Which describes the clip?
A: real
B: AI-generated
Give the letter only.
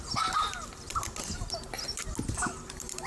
A